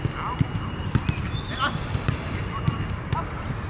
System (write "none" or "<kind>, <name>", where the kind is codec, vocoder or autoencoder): none